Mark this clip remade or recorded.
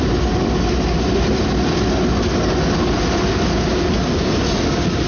recorded